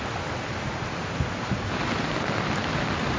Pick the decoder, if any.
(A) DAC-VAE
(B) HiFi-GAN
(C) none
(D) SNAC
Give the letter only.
C